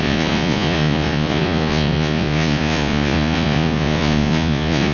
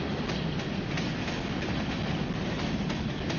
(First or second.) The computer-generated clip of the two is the first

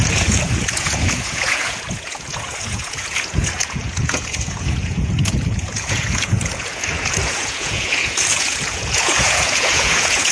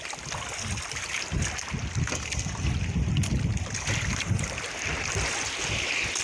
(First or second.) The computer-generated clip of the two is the first